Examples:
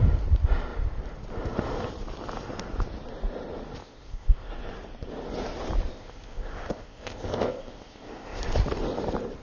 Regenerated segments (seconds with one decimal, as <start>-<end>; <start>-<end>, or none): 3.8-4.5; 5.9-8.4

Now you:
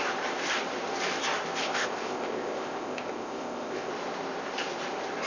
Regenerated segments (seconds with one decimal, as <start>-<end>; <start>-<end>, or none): 1.6-3.9

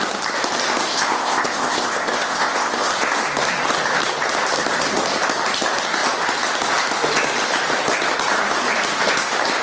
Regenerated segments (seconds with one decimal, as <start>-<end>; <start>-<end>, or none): 0.9-2.9